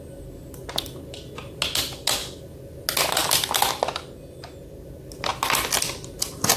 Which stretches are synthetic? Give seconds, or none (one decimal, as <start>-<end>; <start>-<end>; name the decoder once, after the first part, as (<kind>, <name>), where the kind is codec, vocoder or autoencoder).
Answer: none